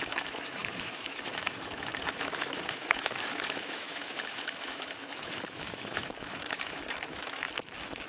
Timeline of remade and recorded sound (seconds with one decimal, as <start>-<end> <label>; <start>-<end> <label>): 0.0-8.1 remade